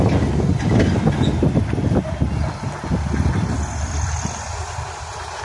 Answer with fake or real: real